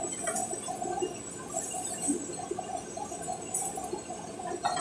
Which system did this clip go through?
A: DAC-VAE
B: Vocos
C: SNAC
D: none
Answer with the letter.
D